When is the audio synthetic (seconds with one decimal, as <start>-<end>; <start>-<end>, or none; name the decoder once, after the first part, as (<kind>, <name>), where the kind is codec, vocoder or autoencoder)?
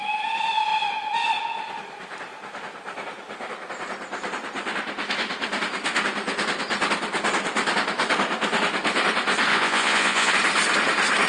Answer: 9.5-10.3 (vocoder, Vocos)